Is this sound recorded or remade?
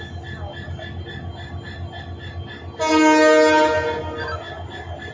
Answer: recorded